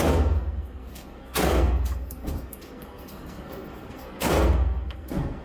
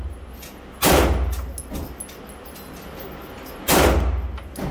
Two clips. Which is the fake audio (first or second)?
first